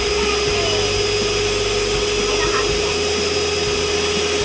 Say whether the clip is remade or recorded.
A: recorded